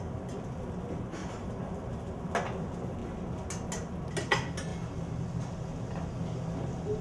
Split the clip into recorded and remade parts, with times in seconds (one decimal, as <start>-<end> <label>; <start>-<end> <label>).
0.0-1.2 recorded; 1.2-2.3 remade; 2.3-7.0 recorded